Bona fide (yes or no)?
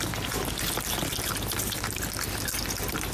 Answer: yes